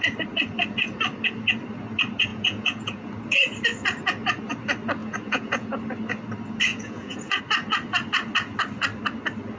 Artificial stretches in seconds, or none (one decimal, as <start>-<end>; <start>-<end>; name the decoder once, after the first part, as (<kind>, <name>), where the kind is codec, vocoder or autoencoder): 2.3-3.1 (vocoder, Vocos); 5.0-5.8; 6.7-7.4